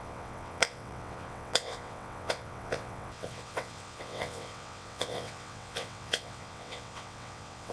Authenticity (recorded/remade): remade